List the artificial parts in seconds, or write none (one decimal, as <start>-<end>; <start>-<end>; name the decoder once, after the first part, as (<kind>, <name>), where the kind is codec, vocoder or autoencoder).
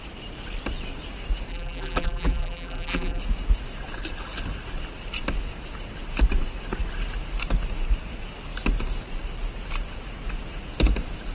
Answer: 1.5-3.2 (vocoder, BigVGAN v2)